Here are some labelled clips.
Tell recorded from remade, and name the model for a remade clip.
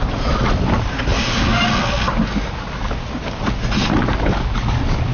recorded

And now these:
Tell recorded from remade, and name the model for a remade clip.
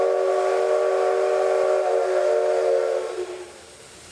recorded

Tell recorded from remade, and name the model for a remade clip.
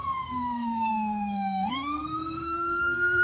remade, codec, SNAC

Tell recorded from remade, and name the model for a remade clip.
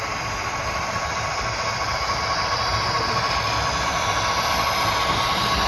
recorded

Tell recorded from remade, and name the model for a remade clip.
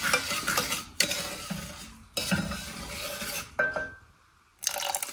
recorded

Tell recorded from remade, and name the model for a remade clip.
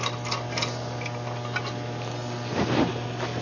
recorded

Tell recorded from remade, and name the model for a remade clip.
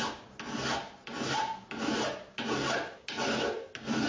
recorded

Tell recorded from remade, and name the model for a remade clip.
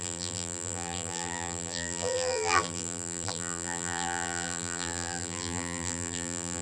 remade, vocoder, BigVGAN v2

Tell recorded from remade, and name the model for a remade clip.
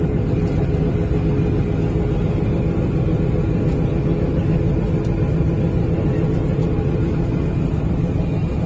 recorded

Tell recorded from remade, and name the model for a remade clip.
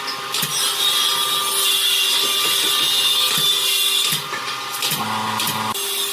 recorded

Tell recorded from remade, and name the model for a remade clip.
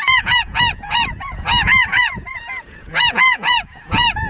remade, vocoder, Vocos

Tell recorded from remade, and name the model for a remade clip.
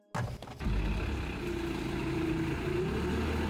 recorded